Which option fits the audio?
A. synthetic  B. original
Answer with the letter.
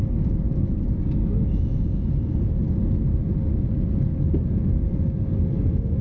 B